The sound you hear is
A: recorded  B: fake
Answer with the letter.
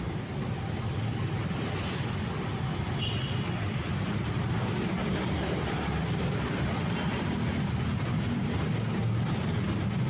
A